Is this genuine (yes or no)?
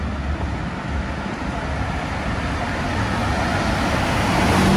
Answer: yes